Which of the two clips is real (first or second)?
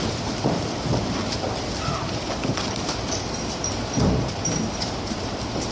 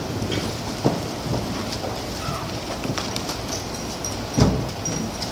second